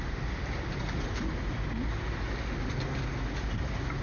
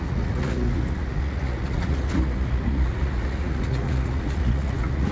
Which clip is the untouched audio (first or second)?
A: first